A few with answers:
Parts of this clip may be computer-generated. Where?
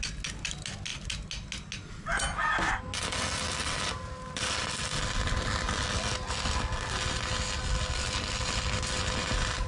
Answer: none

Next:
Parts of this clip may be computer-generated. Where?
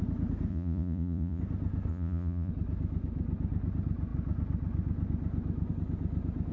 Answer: 0.5-1.4 (vocoder, Vocos); 1.9-2.5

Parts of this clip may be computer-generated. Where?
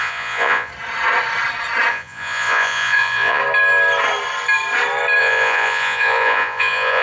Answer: 0.0-0.7 (vocoder, Vocos); 1.9-3.4; 5.2-7.0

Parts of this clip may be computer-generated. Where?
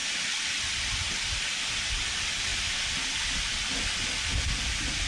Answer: none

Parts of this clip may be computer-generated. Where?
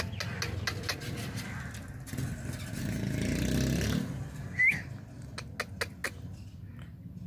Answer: none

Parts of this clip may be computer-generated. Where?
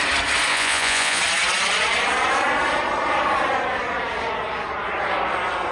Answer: 0.5-1.2 (vocoder, Vocos)